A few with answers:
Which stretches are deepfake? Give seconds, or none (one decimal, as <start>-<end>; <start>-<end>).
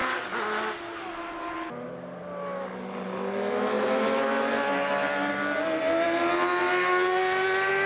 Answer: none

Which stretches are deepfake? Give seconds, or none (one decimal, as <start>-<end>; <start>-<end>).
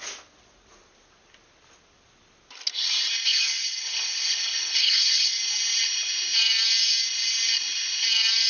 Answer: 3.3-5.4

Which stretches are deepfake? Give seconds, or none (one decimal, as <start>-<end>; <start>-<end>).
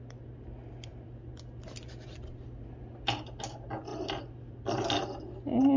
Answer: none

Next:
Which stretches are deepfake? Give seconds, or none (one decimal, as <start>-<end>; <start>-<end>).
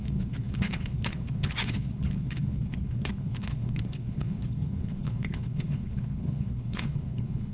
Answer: 0.0-7.5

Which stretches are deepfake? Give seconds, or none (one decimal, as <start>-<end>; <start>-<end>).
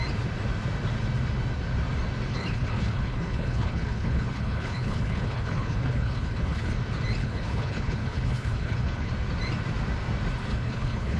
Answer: 2.3-6.7; 7.2-9.1; 10.5-11.2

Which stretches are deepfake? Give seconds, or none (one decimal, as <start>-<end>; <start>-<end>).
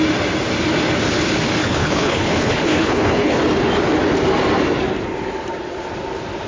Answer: 1.6-3.4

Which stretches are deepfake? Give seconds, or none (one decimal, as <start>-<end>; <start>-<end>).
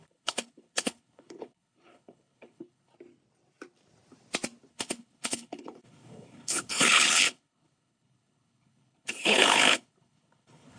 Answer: 0.0-2.9; 4.7-10.8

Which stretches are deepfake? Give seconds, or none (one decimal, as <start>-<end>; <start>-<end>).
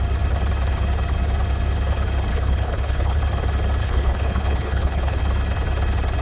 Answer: 2.3-3.2; 3.8-5.2